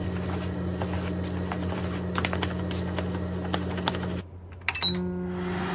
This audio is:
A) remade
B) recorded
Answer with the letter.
B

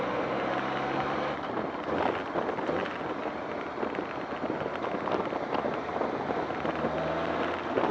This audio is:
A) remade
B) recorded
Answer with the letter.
B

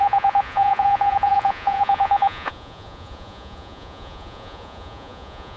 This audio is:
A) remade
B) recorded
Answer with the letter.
A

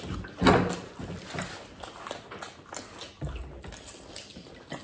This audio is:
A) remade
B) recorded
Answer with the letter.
B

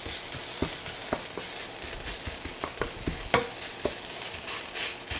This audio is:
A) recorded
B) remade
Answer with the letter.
A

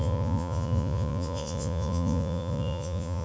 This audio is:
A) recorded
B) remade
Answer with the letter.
B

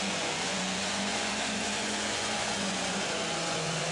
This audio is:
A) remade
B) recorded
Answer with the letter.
A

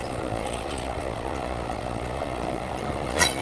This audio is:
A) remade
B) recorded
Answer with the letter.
A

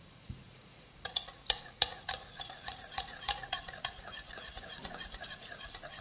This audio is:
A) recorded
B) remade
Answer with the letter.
B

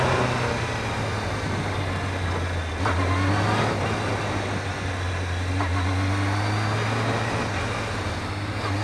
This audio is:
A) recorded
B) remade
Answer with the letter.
A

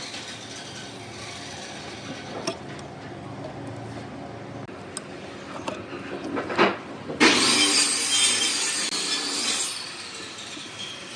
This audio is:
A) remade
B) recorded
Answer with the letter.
B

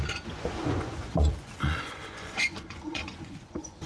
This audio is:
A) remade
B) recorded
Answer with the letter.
A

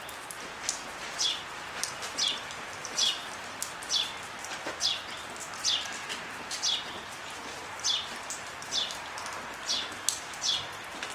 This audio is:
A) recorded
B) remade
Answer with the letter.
A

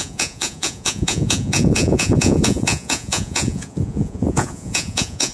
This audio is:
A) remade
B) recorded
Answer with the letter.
A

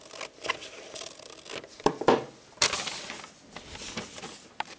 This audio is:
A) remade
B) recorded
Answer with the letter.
B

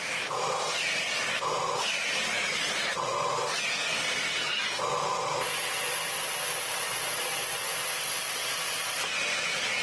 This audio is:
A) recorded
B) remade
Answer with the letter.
A